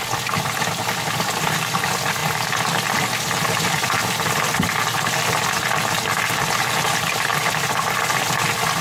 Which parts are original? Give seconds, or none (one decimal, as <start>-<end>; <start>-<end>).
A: 0.0-8.8